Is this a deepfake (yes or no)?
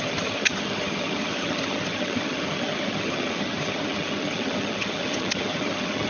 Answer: yes